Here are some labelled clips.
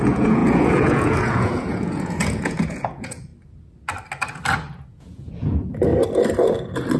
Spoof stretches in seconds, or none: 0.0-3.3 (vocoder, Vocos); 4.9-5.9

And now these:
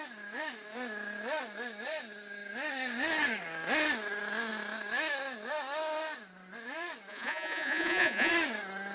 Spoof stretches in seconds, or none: 7.1-8.3 (vocoder, Vocos)

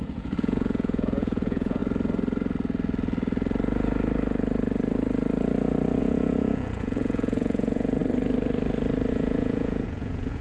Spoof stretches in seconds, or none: 0.0-1.8 (vocoder, Vocos); 6.0-8.0; 9.1-10.4

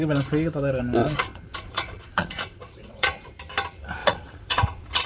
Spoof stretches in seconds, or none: 1.0-3.3 (vocoder, Vocos); 4.0-5.1

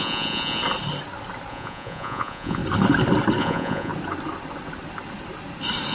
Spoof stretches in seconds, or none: 0.0-0.6 (vocoder, Vocos); 1.5-2.6; 3.4-3.9

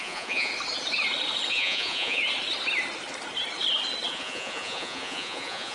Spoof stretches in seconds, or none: 0.0-0.5 (vocoder, Vocos); 1.5-2.2; 4.1-5.7